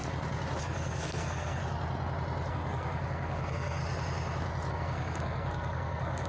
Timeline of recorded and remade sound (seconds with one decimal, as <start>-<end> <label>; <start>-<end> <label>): 0.0-0.6 recorded; 0.6-1.6 remade; 1.6-2.5 recorded; 2.5-3.8 remade; 3.8-4.7 recorded; 4.7-6.3 remade